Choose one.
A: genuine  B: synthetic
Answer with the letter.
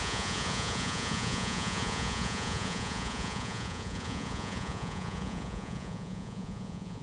B